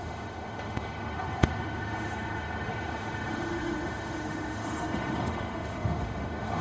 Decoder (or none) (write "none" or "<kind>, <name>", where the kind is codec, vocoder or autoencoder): autoencoder, DAC-VAE